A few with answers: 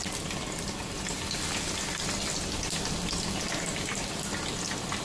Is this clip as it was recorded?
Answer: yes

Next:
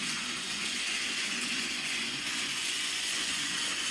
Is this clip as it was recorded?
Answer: no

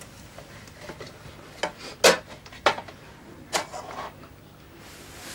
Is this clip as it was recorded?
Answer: yes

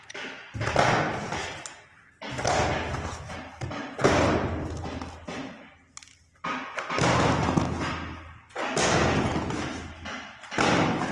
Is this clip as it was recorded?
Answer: yes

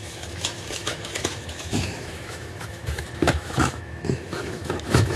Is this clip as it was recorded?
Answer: no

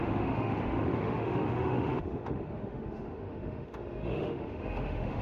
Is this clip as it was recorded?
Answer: no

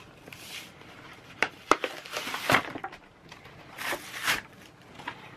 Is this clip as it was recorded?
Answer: no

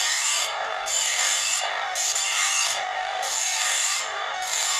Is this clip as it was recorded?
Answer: no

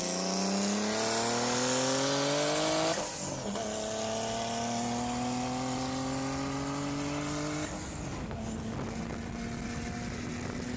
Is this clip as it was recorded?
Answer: yes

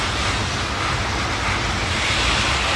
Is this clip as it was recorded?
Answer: yes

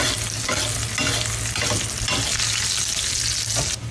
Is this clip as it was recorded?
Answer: yes